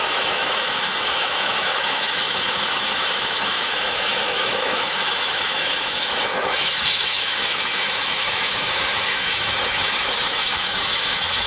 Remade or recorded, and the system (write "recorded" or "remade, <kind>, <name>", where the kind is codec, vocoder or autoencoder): remade, autoencoder, DAC-VAE